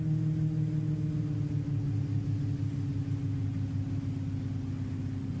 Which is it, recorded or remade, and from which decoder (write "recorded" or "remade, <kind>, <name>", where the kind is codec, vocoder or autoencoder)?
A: recorded